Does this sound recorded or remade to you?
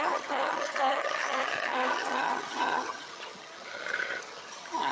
remade